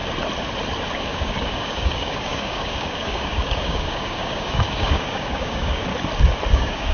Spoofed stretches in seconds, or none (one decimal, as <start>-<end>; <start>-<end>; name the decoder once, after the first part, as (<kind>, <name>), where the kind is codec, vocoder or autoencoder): 1.0-5.9 (codec, DAC); 6.5-6.9

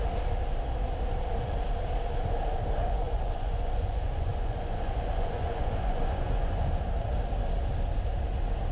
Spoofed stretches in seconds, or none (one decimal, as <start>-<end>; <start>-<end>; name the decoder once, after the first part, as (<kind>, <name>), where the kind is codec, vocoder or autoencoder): 2.8-6.8 (vocoder, Vocos)

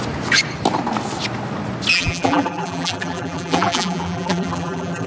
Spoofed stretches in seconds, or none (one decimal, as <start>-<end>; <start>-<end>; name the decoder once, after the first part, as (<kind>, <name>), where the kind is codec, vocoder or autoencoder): 1.9-5.1 (vocoder, BigVGAN v2)

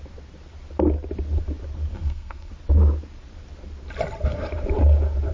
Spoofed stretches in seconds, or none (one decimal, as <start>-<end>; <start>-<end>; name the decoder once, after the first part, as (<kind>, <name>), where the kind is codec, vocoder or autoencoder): 1.9-2.5 (codec, SNAC)

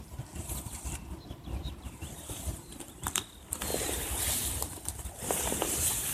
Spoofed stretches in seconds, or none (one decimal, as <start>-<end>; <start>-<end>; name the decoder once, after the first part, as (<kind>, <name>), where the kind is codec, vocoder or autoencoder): 0.0-3.7 (vocoder, BigVGAN v2); 4.2-6.1

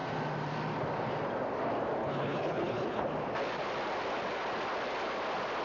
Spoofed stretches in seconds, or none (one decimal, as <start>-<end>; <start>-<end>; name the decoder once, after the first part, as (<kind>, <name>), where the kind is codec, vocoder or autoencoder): 2.0-3.0 (codec, HILCodec)

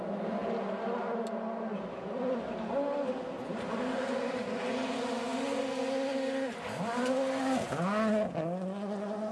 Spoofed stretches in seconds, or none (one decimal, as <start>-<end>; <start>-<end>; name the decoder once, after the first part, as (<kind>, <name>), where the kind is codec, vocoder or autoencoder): none